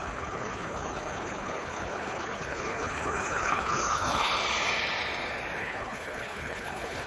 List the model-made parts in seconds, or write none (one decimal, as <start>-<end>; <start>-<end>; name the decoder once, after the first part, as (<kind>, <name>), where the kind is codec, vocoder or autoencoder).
0.0-4.3 (codec, HILCodec); 5.6-7.1